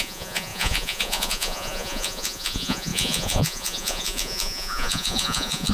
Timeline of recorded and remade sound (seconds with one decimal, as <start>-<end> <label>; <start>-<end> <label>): 0.0-5.7 remade